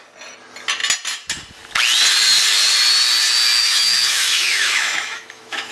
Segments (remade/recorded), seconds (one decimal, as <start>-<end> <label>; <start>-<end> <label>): 0.0-3.6 recorded; 3.6-5.7 remade